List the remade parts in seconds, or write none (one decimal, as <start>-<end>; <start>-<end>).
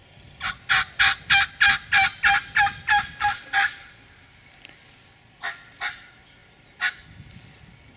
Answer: none